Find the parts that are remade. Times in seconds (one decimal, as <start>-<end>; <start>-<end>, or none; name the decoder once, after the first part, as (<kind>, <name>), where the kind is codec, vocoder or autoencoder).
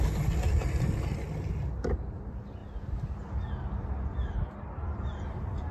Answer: none